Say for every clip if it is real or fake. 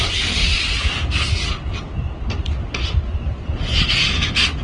real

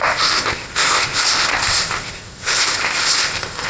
fake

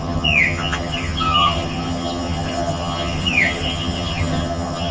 fake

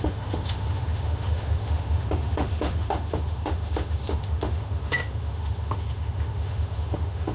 fake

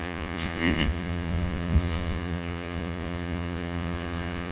fake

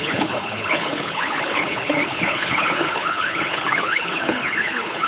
fake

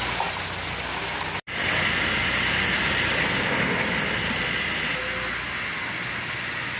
real